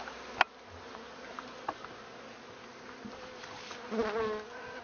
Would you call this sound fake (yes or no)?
no